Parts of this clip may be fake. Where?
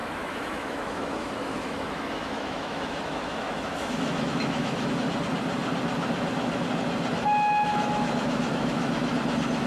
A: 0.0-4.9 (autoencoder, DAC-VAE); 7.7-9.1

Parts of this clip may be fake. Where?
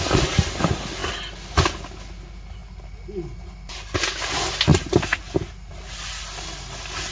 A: none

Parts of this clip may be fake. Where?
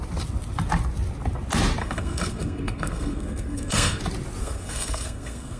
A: 1.8-4.0 (codec, SNAC); 4.4-5.6